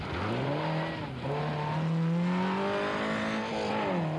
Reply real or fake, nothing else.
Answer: real